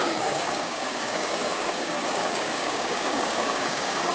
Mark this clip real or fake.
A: fake